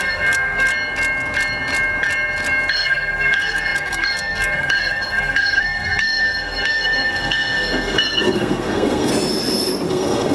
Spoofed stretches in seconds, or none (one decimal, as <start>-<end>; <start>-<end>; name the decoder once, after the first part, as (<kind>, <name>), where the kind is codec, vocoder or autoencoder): 0.0-0.7 (codec, SNAC); 2.7-9.1; 9.9-10.3